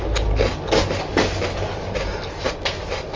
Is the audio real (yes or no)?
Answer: yes